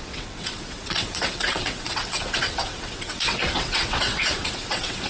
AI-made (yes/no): yes